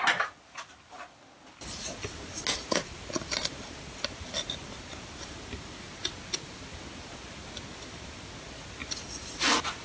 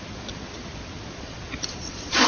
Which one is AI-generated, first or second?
second